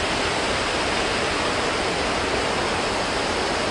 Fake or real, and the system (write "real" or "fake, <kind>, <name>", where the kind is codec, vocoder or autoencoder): real